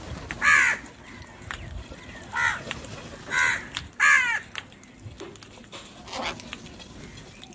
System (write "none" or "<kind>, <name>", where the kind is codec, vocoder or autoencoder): none